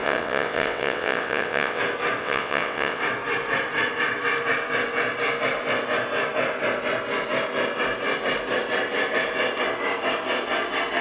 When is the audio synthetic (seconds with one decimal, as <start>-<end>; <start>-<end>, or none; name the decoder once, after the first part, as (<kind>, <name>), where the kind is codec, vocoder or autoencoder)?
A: 0.0-1.8 (vocoder, WaveNeXt); 2.2-3.0